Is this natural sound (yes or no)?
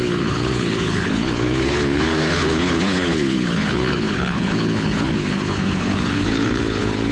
no